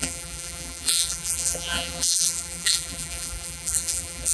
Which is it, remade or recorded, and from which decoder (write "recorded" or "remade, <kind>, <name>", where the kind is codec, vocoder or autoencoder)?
remade, vocoder, BigVGAN v2